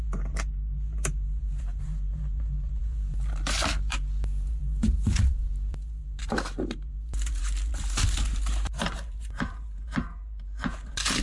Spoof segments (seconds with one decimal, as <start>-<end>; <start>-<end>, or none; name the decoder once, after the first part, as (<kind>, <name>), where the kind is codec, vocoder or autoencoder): 0.0-11.2 (vocoder, BigVGAN v2)